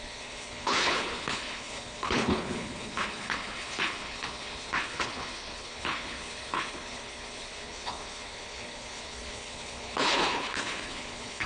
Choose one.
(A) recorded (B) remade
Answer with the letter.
B